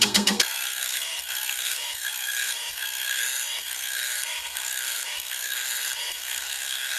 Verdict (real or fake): fake